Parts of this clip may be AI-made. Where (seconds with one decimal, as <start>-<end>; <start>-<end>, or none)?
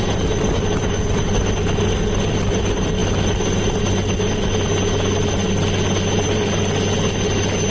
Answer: none